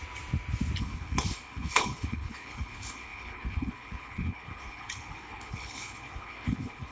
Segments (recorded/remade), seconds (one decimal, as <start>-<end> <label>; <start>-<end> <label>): 0.0-0.8 recorded; 0.8-6.9 remade